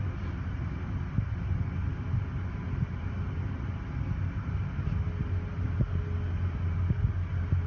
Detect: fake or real real